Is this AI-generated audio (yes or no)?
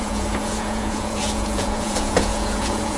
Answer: yes